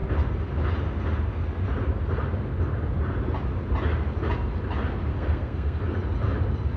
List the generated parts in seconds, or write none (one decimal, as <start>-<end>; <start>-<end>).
5.1-5.8